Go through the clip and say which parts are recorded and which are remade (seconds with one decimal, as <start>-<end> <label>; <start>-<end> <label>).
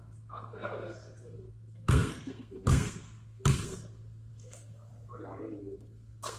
0.0-4.9 remade; 4.9-5.6 recorded; 5.6-6.4 remade